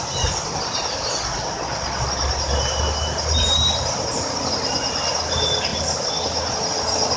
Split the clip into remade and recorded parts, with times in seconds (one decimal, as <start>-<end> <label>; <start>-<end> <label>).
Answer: 0.0-7.2 recorded